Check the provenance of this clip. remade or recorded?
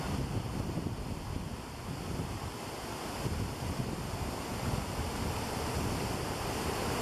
recorded